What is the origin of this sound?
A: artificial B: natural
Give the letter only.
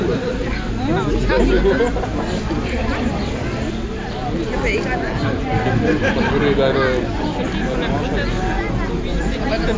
B